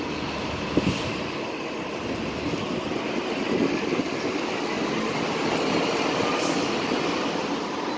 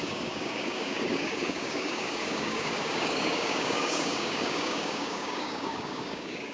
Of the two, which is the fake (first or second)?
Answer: second